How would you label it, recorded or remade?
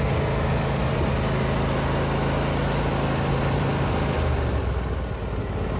recorded